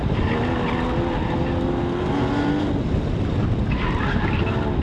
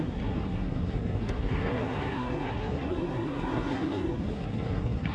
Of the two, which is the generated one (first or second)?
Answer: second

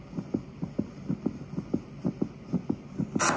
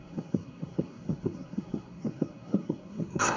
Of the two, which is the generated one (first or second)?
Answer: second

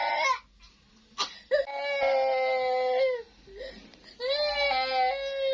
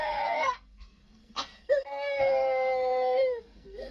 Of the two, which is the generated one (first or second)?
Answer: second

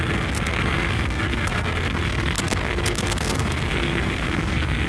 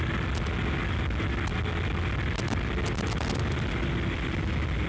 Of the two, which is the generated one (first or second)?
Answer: first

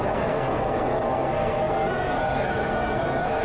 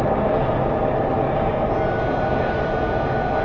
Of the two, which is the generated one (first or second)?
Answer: first